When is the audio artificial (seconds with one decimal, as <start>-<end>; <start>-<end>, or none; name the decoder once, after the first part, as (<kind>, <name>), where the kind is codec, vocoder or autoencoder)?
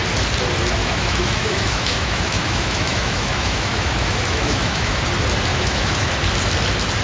0.8-5.0 (autoencoder, DAC-VAE); 5.5-6.1